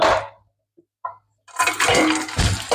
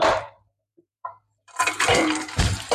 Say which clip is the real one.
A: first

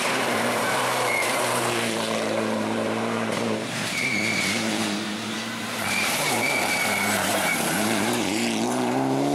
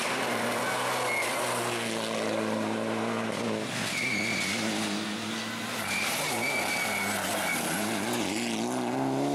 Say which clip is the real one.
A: second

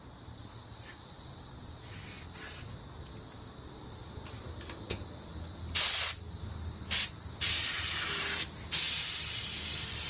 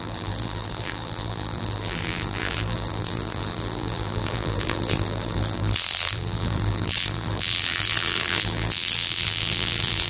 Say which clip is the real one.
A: first